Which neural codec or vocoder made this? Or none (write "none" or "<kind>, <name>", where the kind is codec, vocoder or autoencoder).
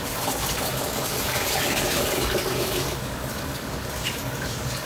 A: codec, DAC